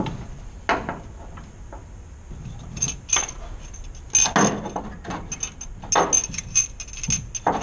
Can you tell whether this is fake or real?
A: real